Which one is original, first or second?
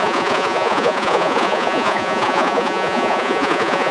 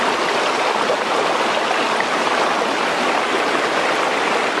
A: second